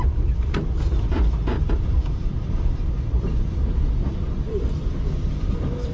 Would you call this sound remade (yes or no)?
yes